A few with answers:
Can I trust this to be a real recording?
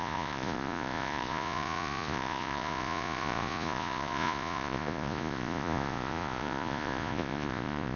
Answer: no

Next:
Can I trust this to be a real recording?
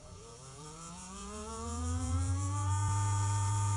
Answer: no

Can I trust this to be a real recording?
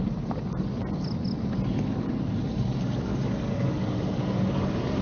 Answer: yes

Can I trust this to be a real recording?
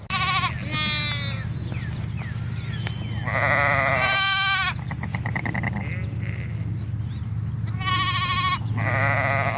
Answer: yes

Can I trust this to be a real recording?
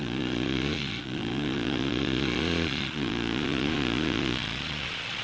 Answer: no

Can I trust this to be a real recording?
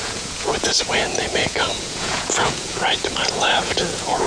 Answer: no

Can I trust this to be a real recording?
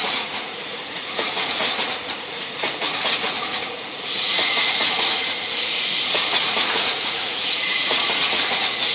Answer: no